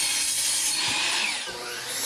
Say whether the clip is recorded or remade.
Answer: remade